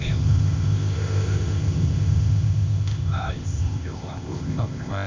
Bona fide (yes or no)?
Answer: no